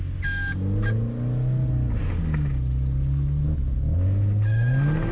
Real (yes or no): yes